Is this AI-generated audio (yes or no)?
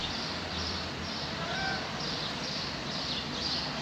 yes